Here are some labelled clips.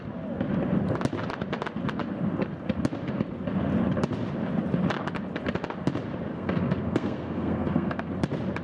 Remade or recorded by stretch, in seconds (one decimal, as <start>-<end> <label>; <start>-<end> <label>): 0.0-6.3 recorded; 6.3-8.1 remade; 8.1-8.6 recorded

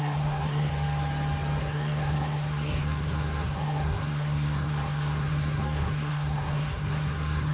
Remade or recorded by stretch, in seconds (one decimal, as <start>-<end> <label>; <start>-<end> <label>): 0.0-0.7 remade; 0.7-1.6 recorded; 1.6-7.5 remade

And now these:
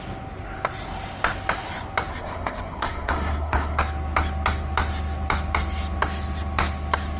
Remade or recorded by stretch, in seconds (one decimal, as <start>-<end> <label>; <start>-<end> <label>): 0.0-2.1 recorded; 2.1-3.8 remade; 3.8-7.2 recorded